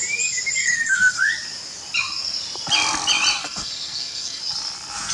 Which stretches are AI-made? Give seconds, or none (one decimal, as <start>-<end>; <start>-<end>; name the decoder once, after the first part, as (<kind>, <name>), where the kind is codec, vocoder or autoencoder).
0.6-1.2 (codec, SNAC); 3.4-4.4